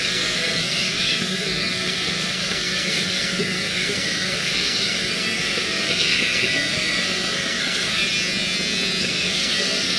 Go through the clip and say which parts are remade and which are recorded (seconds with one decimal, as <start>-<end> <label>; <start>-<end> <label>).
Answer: 0.0-8.0 remade; 8.0-9.0 recorded; 9.0-10.0 remade